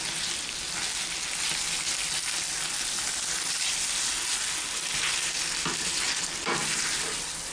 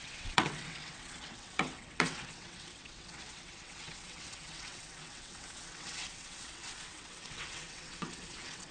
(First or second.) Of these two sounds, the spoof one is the second